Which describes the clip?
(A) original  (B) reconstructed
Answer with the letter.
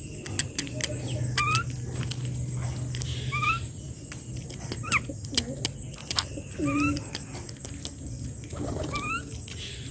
A